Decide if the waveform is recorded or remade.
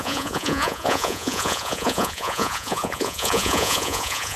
remade